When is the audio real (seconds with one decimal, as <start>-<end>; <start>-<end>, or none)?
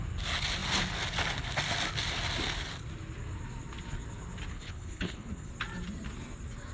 0.0-4.5; 5.5-6.7